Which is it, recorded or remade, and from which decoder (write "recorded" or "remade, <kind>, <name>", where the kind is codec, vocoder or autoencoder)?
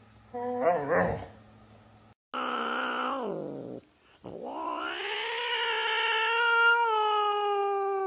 recorded